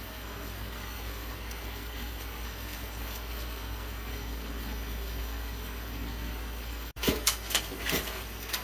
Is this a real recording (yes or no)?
no